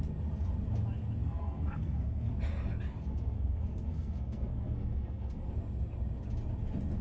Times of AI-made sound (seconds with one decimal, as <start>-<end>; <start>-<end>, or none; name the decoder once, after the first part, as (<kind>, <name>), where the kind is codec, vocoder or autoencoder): 1.2-2.3 (codec, SNAC); 3.1-5.5